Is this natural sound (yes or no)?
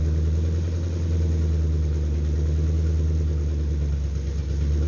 yes